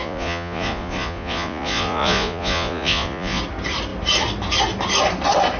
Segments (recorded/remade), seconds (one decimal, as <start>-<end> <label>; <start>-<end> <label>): 0.0-3.4 remade; 3.4-5.6 recorded